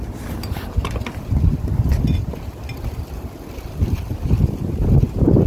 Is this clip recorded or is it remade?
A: recorded